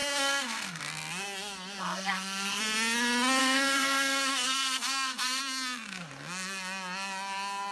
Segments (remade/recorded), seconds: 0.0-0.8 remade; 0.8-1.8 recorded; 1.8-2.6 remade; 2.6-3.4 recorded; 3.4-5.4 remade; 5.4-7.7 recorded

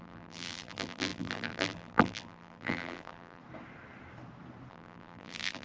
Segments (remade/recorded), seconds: 0.0-3.4 remade; 3.4-4.7 recorded; 4.7-5.6 remade

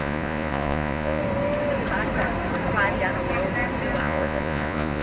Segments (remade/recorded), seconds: 0.0-1.2 remade; 1.2-4.0 recorded; 4.0-5.0 remade

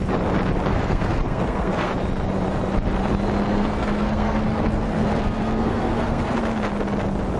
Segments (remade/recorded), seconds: 0.0-0.7 recorded; 0.7-1.9 remade; 1.9-3.5 recorded; 3.5-6.4 remade; 6.4-7.4 recorded

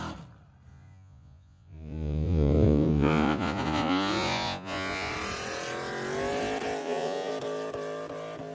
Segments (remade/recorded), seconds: 0.0-0.7 recorded; 0.7-5.1 remade; 5.1-6.8 recorded; 6.8-7.3 remade; 7.3-8.5 recorded